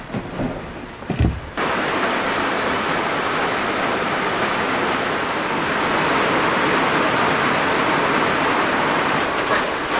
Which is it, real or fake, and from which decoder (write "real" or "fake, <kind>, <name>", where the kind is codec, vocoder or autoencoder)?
fake, vocoder, BigVGAN v2